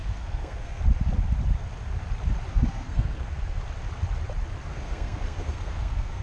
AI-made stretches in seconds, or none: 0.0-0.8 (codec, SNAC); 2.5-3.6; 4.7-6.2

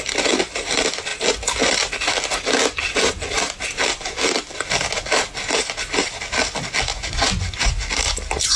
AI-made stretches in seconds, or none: 6.9-7.7 (vocoder, Vocos)

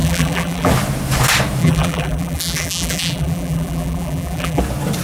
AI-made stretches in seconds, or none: 0.0-0.7 (vocoder, BigVGAN v2); 1.6-4.6

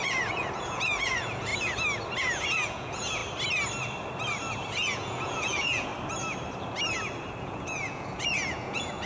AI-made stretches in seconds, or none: 0.0-1.5 (vocoder, Vocos); 2.2-3.2; 4.7-5.9; 7.4-9.1

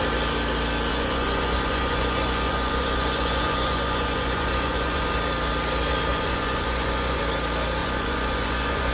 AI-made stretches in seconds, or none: 0.9-5.1 (vocoder, Vocos); 6.1-7.2; 7.8-8.9